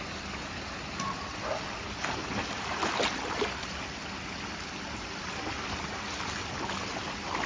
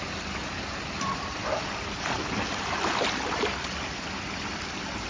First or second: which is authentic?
first